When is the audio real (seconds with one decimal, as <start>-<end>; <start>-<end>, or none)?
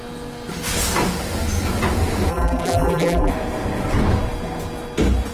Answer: 0.0-2.3; 3.3-5.3